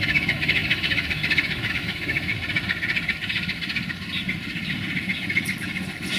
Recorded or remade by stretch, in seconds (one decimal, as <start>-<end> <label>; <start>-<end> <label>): 0.0-2.3 remade; 2.3-6.2 recorded